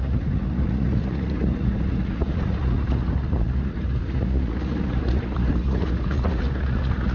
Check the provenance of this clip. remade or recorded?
remade